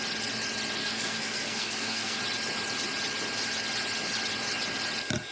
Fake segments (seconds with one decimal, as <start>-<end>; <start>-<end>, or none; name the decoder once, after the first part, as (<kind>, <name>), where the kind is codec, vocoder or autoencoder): 0.8-2.2 (codec, SNAC)